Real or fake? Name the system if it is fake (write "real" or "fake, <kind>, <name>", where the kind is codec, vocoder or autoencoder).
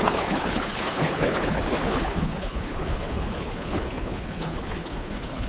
fake, codec, HILCodec